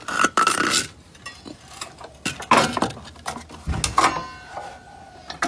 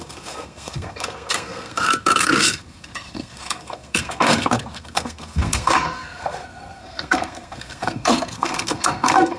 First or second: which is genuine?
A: first